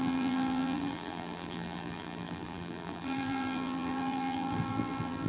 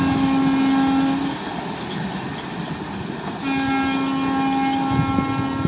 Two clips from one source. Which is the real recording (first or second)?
second